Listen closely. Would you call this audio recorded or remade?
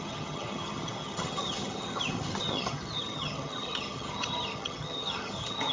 remade